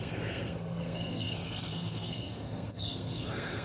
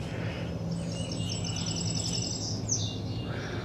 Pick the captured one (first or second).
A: second